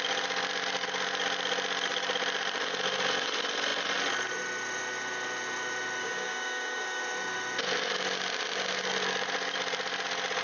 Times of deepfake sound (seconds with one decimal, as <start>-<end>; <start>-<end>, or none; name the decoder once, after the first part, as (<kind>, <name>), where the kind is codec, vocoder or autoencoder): 6.0-7.0 (codec, DAC)